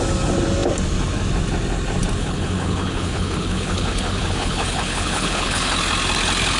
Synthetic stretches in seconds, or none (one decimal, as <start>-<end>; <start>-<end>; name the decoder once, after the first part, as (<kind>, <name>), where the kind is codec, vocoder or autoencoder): 2.2-5.7 (codec, HILCodec)